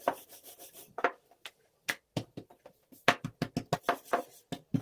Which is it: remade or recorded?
recorded